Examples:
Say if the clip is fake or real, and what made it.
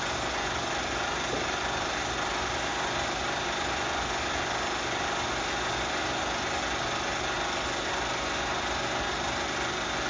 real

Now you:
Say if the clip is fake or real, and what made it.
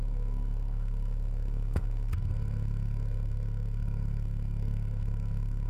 fake, codec, SNAC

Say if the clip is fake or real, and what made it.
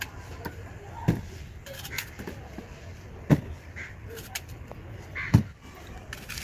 real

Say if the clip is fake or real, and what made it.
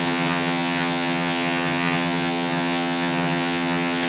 fake, vocoder, HiFi-GAN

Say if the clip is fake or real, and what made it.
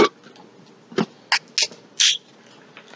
real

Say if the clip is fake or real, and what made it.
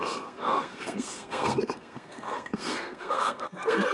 fake, codec, SNAC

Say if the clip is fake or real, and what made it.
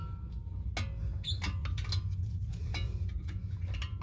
real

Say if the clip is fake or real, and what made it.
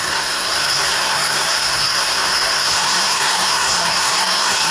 fake, codec, SNAC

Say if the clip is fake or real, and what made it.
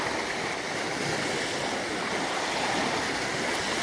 real